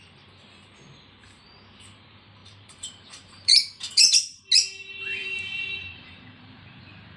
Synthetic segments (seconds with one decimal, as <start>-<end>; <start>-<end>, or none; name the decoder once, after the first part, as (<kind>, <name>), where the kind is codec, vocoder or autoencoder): 2.4-4.5 (vocoder, BigVGAN v2); 5.2-6.8